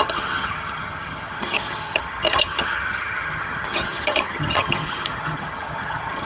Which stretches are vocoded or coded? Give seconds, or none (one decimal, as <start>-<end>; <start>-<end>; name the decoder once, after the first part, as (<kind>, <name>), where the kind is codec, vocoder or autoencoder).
0.0-6.2 (vocoder, HiFi-GAN)